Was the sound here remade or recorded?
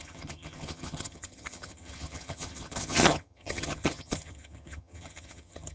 remade